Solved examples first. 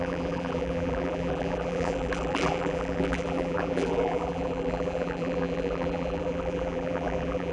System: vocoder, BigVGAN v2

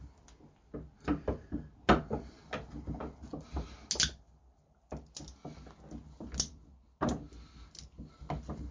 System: none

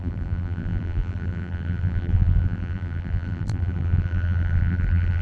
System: vocoder, BigVGAN v2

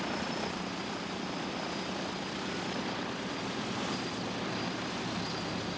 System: vocoder, BigVGAN v2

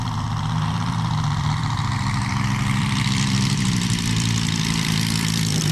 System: vocoder, BigVGAN v2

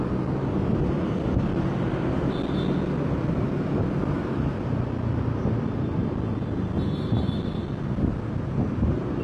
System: none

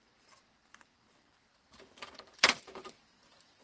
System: vocoder, BigVGAN v2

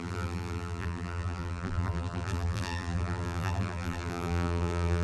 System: vocoder, BigVGAN v2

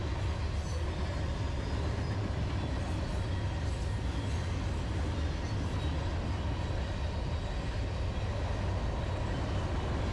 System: none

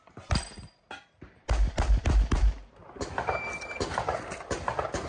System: vocoder, BigVGAN v2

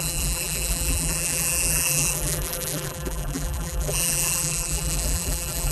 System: vocoder, BigVGAN v2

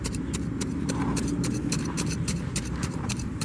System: vocoder, BigVGAN v2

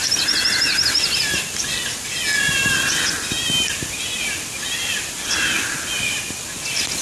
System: none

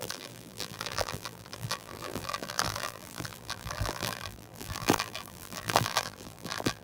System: vocoder, BigVGAN v2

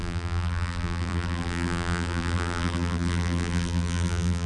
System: vocoder, BigVGAN v2